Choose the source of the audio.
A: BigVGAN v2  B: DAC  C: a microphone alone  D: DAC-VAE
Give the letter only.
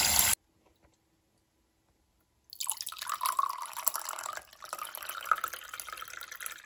C